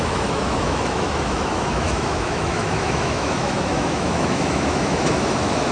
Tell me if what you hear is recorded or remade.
remade